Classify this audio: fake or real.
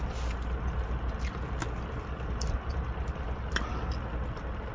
real